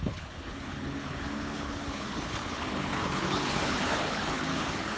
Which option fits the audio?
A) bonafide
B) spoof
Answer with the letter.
B